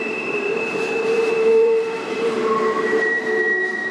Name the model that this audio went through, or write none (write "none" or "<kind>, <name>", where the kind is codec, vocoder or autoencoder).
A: vocoder, BigVGAN v2